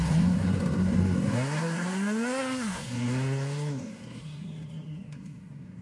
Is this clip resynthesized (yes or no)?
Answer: yes